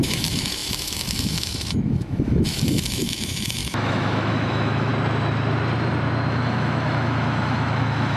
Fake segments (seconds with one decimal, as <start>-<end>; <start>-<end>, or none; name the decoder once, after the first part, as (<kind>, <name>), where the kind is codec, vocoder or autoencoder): 0.0-4.9 (autoencoder, DAC-VAE); 6.3-8.2